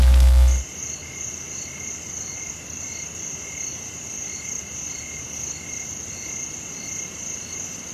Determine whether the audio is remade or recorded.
recorded